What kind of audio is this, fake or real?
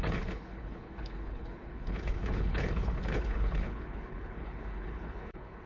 fake